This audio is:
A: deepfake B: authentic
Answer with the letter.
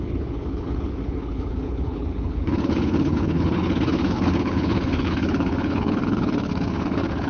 A